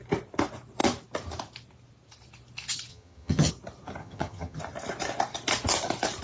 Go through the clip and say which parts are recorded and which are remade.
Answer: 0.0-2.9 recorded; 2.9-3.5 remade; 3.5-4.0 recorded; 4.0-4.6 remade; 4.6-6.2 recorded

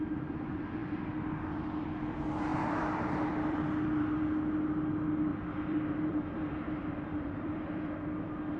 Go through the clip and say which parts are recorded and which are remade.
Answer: 0.0-0.8 recorded; 0.8-1.4 remade; 1.4-2.5 recorded; 2.5-4.2 remade; 4.2-5.3 recorded; 5.3-8.6 remade

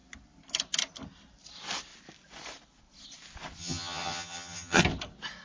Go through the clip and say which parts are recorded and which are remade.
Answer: 0.0-3.6 recorded; 3.6-4.8 remade; 4.8-5.4 recorded

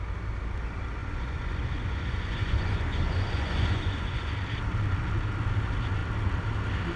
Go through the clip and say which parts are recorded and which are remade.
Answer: 0.0-1.0 recorded; 1.0-4.3 remade; 4.3-7.0 recorded

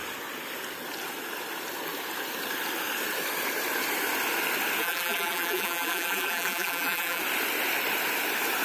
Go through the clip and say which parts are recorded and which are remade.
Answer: 0.0-4.8 recorded; 4.8-7.2 remade; 7.2-8.6 recorded

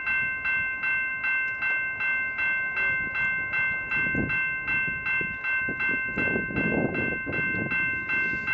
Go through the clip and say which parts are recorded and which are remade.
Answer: 0.0-8.5 recorded